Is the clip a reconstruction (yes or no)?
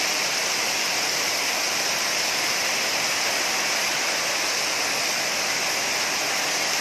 no